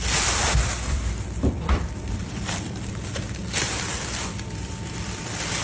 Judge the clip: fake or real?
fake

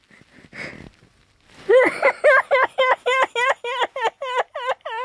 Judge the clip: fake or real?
real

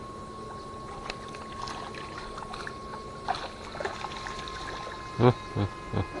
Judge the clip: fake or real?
real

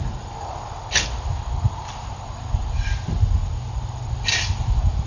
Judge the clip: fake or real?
real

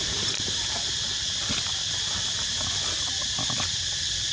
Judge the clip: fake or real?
real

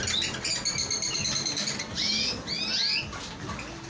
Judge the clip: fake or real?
real